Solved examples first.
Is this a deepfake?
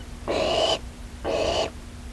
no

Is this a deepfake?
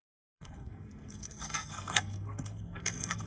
yes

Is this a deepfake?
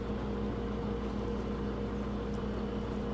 no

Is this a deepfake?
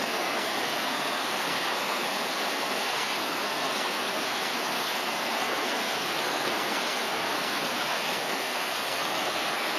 yes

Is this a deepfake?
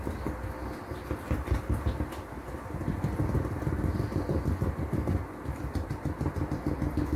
no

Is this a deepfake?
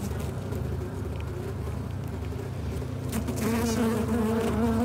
no